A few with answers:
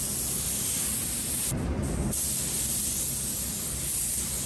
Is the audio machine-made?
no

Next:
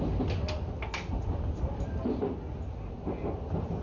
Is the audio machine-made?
no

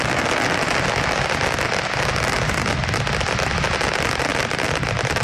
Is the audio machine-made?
no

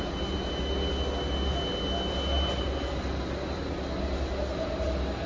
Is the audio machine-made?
no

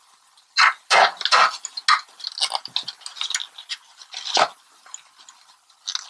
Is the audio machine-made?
no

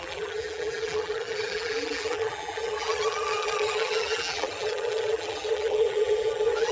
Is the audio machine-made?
yes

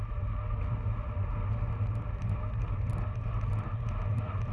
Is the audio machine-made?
no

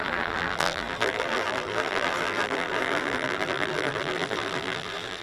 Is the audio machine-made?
yes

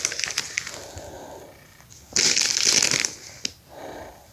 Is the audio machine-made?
no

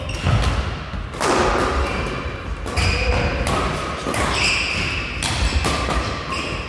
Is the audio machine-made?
no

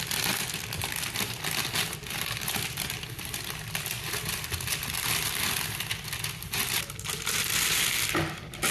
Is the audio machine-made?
yes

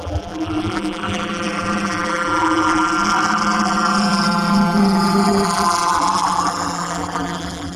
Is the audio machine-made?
yes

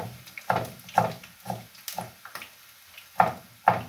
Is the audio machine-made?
no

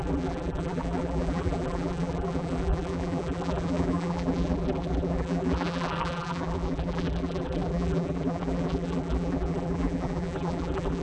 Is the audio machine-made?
yes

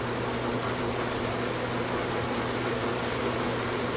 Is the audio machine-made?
no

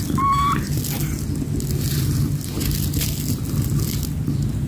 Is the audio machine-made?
no